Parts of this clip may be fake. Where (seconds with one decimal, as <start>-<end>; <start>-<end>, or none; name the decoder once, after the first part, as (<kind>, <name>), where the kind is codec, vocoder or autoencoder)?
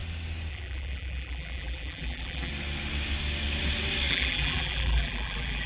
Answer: 0.5-2.5 (vocoder, BigVGAN v2); 4.1-5.7